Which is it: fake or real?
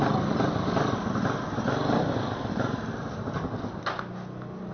real